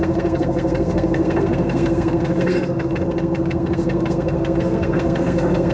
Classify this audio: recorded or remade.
remade